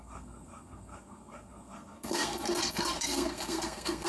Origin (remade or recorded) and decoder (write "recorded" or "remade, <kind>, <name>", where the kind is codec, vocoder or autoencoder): remade, codec, SNAC